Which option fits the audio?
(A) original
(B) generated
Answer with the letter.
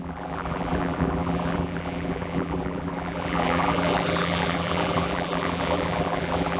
B